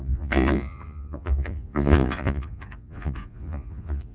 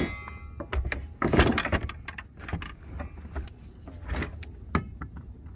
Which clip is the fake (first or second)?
first